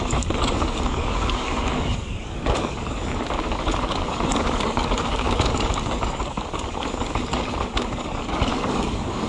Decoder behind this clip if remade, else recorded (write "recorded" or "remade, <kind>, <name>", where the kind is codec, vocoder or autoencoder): remade, codec, DAC